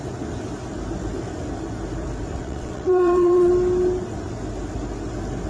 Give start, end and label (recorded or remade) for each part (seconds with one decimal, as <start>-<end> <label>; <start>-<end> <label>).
0.0-2.3 recorded; 2.3-3.5 remade; 3.5-5.5 recorded